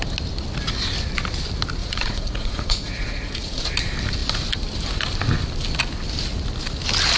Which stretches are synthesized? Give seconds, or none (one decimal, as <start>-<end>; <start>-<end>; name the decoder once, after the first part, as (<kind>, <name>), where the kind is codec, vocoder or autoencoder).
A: 1.8-3.7 (vocoder, Vocos)